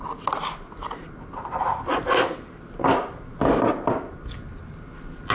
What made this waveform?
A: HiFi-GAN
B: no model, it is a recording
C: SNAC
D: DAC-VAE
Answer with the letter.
B